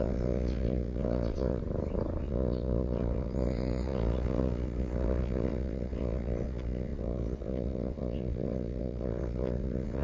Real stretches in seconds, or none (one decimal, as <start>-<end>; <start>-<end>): 1.6-2.2

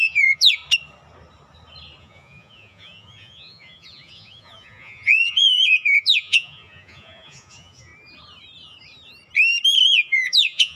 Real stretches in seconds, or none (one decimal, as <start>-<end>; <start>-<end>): 0.6-2.0; 7.9-9.9

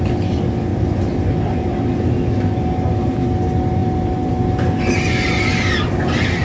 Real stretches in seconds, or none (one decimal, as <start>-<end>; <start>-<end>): 0.0-6.4

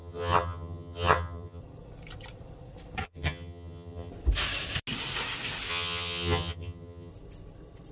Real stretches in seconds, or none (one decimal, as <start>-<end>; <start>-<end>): 1.6-3.0; 4.1-5.7; 7.1-7.9

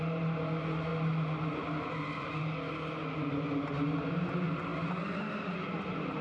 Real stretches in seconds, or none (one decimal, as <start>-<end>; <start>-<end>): 0.0-6.2

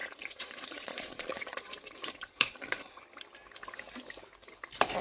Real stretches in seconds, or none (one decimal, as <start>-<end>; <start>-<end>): 3.0-5.0

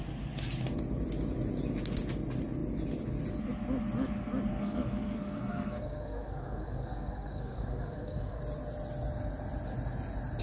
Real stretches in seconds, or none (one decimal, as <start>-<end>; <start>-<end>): 0.0-4.5; 8.4-10.4

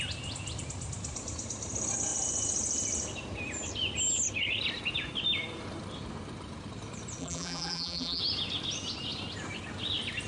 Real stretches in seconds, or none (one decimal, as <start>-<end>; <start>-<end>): 0.0-7.2; 8.2-10.3